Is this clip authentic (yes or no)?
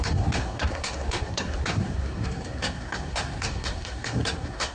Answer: no